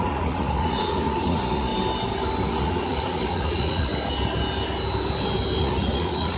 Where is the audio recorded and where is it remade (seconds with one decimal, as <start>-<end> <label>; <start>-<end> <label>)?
0.0-1.7 remade; 1.7-2.5 recorded; 2.5-3.9 remade; 3.9-5.6 recorded; 5.6-6.4 remade